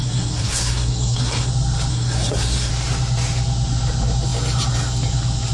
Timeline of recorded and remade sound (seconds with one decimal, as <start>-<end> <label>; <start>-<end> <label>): 0.0-1.5 remade; 1.5-1.9 recorded; 1.9-2.7 remade; 2.7-5.5 recorded